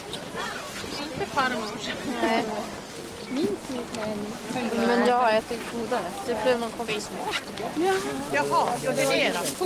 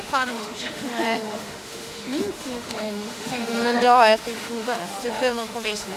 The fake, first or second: second